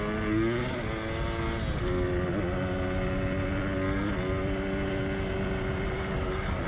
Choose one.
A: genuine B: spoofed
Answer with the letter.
A